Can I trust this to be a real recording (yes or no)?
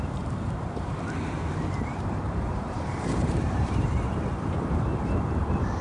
no